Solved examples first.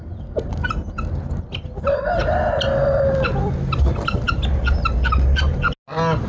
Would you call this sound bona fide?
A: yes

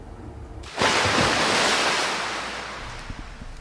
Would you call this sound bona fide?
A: yes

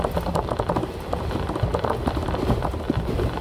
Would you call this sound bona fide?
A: yes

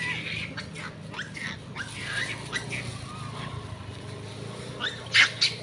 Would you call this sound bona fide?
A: yes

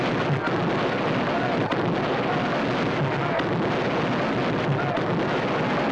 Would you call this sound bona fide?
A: yes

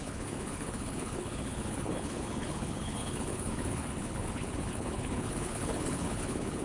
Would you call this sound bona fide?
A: no